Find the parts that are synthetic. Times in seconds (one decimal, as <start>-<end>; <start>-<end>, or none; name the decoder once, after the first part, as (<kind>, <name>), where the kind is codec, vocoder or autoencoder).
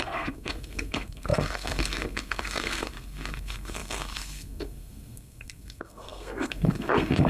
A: 0.0-7.3 (codec, SNAC)